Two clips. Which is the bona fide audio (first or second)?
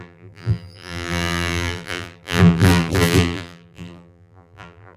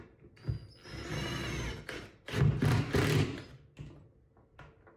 second